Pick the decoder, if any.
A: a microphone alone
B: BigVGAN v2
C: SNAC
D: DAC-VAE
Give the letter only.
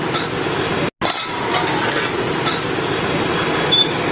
A